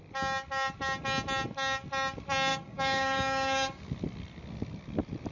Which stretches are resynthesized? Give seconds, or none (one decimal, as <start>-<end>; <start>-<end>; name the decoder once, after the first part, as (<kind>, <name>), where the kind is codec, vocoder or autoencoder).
2.5-3.8 (codec, DAC)